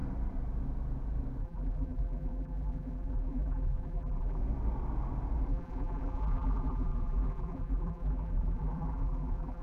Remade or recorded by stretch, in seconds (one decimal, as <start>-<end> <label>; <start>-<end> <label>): 0.0-1.4 recorded; 1.4-4.4 remade; 4.4-5.5 recorded; 5.5-9.6 remade

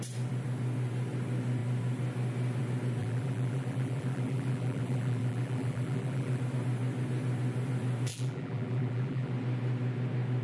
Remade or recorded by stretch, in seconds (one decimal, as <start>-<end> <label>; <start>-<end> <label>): 0.0-3.0 recorded; 3.0-6.4 remade; 6.4-8.1 recorded; 8.1-9.3 remade; 9.3-10.4 recorded

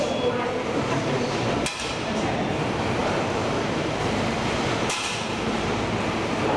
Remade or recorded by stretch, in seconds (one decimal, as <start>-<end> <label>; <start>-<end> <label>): 0.0-1.7 recorded; 1.7-2.6 remade; 2.6-3.0 recorded; 3.0-5.7 remade; 5.7-6.6 recorded

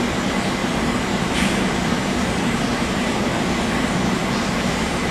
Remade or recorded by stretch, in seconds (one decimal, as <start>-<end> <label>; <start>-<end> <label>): 0.0-0.6 recorded; 0.6-3.2 remade; 3.2-4.2 recorded; 4.2-5.1 remade

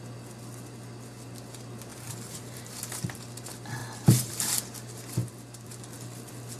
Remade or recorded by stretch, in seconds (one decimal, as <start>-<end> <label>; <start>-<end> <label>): 0.0-1.9 recorded; 1.9-2.8 remade; 2.8-3.8 recorded; 3.8-4.6 remade; 4.6-6.6 recorded

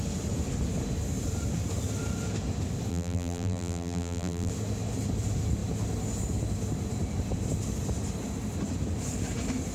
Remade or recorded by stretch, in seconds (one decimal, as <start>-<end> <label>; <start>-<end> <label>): 0.0-2.9 recorded; 2.9-4.5 remade; 4.5-9.7 recorded